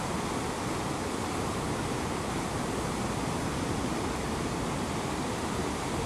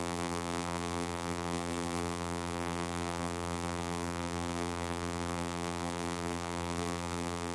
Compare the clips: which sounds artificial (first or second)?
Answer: second